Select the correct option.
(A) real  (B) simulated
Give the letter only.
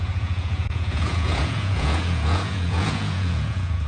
B